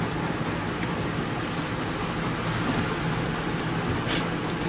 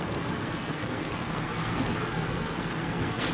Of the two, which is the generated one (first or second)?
second